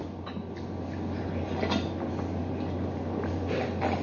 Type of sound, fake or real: real